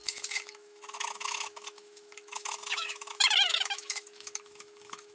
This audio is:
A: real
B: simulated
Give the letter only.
B